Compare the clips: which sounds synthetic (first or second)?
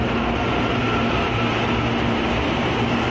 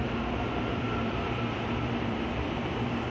second